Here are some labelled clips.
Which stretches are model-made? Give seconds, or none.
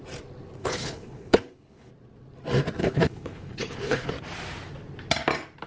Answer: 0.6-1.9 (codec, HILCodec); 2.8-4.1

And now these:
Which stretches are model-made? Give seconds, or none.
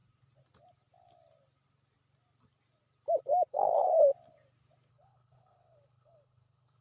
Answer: 3.5-4.0 (codec, HILCodec); 4.9-6.8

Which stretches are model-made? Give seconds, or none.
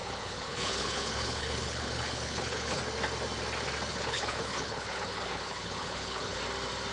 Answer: 0.0-2.8 (codec, HILCodec); 3.9-6.4